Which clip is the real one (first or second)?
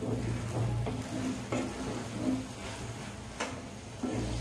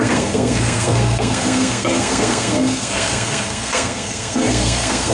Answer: first